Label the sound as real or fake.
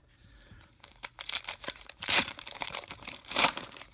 fake